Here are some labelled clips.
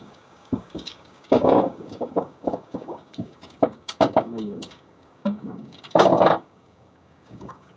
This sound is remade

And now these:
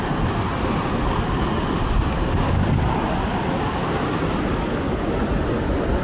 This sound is recorded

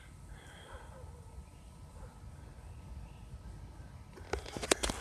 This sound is recorded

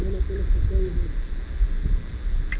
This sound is recorded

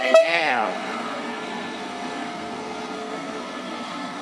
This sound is remade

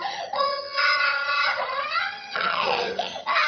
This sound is remade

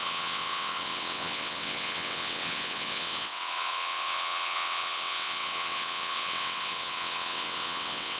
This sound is remade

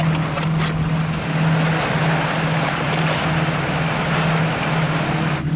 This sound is recorded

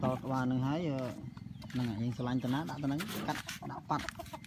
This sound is recorded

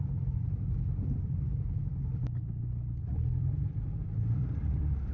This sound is remade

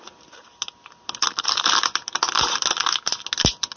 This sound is recorded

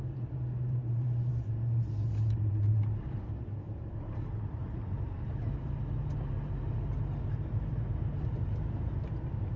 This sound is remade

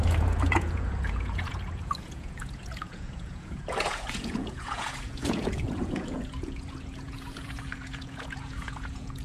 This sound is remade